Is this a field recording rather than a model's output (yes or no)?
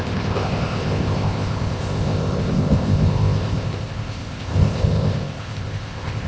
no